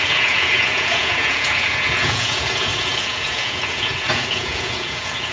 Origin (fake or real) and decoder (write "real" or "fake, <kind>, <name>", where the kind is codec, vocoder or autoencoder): fake, vocoder, Vocos